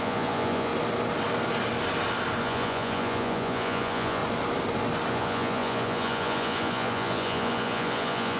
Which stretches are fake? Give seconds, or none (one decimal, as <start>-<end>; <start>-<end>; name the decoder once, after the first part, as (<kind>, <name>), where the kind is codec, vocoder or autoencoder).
0.0-0.7 (vocoder, Vocos); 2.4-4.2; 5.1-8.4